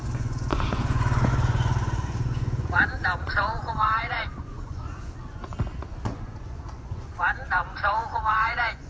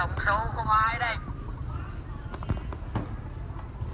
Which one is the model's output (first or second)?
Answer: first